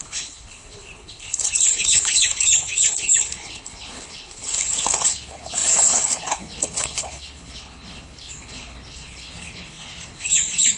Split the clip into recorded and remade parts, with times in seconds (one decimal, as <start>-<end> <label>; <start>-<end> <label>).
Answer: 0.0-10.8 remade